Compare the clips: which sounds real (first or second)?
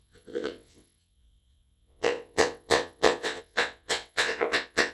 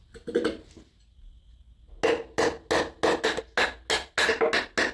second